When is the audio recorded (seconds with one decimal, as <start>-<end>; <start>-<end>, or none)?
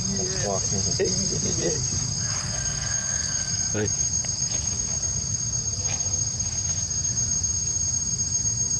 0.0-2.4; 3.5-8.8